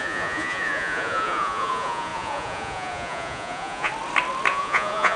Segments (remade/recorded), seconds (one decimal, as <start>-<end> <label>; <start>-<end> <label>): 0.0-3.9 remade; 3.9-4.5 recorded; 4.5-5.2 remade